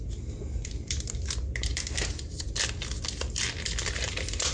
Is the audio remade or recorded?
remade